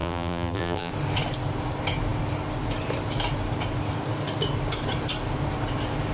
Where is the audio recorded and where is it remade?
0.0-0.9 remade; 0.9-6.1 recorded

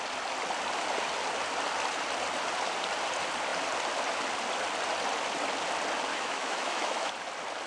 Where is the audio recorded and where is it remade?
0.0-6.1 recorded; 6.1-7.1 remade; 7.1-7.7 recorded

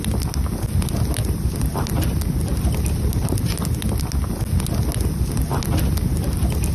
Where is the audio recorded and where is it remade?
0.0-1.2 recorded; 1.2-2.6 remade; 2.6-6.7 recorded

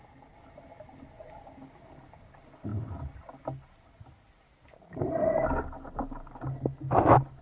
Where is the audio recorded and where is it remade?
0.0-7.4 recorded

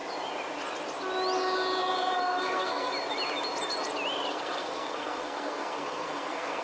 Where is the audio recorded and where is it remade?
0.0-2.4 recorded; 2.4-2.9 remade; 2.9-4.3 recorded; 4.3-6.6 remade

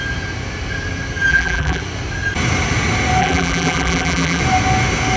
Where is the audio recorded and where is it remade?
0.0-1.3 recorded; 1.3-1.8 remade; 1.8-3.2 recorded; 3.2-4.4 remade; 4.4-5.2 recorded

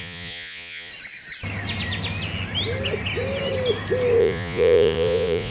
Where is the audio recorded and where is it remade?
0.0-0.9 remade; 0.9-4.2 recorded; 4.2-5.5 remade

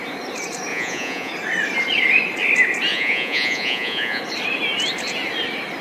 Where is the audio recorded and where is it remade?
0.0-0.7 recorded; 0.7-1.3 remade; 1.3-2.9 recorded; 2.9-4.2 remade; 4.2-5.8 recorded